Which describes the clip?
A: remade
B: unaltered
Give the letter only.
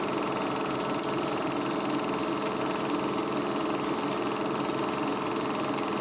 B